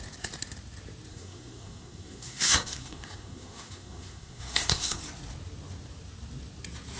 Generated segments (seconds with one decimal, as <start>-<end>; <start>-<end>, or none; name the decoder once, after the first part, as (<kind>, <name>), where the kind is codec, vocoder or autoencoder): 1.1-5.0 (codec, SNAC)